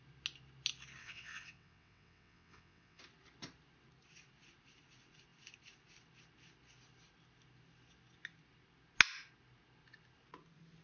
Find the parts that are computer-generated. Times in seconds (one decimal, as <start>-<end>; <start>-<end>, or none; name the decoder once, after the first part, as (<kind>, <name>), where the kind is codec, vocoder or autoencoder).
1.0-3.0 (vocoder, WaveNeXt)